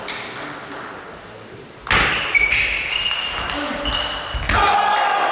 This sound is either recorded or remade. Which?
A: recorded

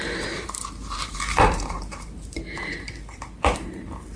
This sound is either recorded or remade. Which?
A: remade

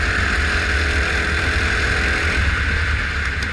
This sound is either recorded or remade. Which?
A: recorded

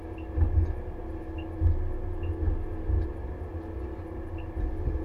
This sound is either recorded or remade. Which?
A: recorded